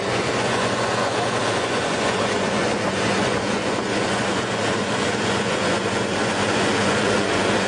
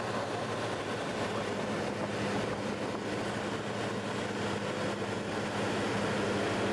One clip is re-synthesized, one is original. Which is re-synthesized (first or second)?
first